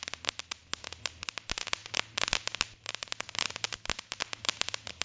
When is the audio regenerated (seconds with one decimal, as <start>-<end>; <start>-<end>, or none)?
none